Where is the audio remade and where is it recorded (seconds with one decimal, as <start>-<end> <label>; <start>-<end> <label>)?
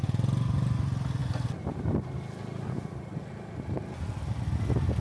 0.0-5.0 recorded